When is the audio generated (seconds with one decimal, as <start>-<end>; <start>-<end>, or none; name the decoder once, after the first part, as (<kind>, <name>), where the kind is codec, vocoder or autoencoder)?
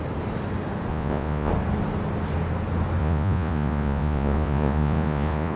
0.9-1.5 (vocoder, Vocos); 3.0-5.6